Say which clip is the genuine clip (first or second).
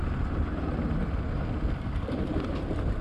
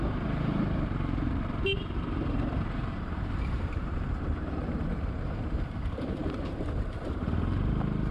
first